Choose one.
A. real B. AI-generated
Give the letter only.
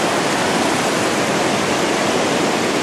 A